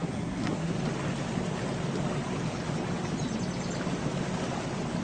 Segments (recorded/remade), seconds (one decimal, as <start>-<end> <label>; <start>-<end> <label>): 0.0-0.7 remade; 0.7-5.0 recorded